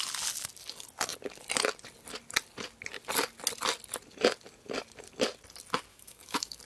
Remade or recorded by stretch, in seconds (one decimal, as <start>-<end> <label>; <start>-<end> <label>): 0.0-5.9 recorded; 5.9-6.6 remade